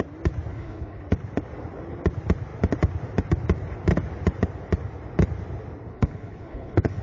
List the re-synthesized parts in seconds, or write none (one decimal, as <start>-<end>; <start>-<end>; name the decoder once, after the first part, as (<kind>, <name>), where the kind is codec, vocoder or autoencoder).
0.5-1.0 (codec, HILCodec); 5.9-7.0